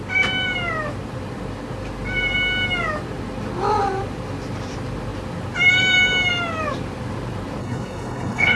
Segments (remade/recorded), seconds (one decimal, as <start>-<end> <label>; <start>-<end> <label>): 0.0-7.6 recorded; 7.6-8.6 remade